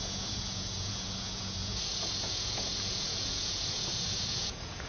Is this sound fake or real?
fake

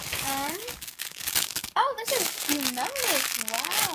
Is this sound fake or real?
fake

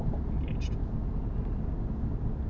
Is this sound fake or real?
real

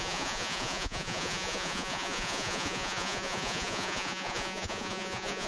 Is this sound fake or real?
fake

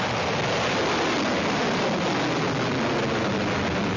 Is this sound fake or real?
real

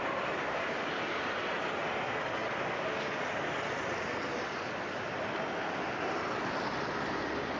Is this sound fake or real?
real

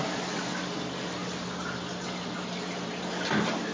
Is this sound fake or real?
real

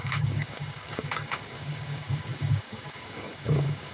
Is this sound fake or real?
fake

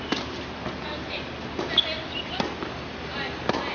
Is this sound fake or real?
real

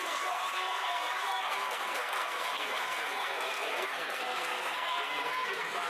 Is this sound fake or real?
fake